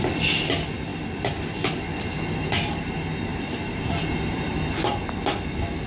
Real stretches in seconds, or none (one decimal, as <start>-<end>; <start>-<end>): 0.0-3.3; 4.5-5.9